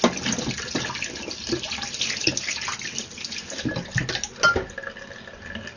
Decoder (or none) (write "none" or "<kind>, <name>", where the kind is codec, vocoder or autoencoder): none